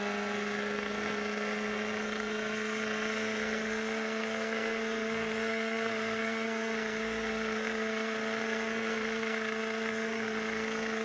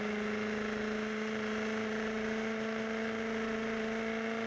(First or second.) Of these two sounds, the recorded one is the second